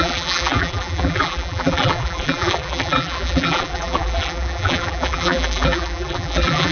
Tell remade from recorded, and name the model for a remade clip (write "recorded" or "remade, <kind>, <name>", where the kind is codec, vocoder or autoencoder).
remade, vocoder, BigVGAN v2